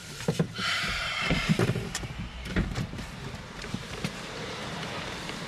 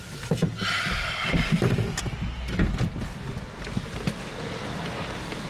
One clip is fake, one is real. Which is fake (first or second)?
first